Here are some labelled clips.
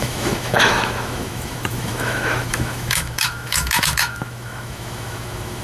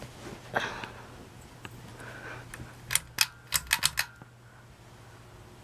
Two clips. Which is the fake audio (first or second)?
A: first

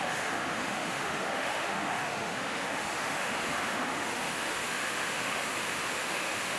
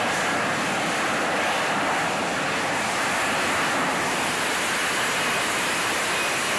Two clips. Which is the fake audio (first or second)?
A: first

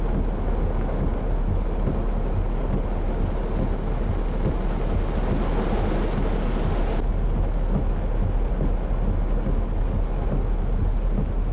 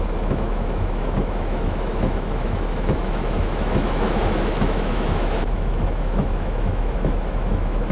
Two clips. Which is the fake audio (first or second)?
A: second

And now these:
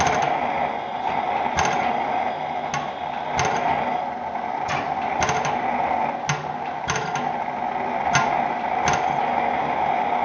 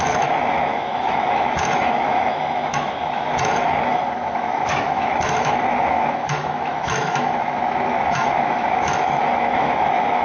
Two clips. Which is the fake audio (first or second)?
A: second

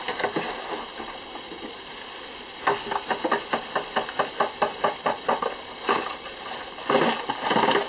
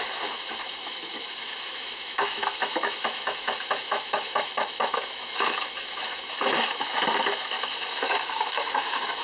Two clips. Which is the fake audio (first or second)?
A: second